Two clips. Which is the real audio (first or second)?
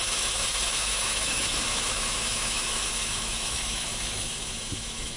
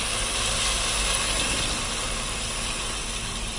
second